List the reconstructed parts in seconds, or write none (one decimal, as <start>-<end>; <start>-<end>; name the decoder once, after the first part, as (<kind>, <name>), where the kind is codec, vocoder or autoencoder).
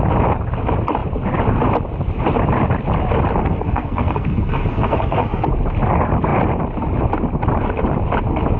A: 3.4-5.5 (codec, SNAC)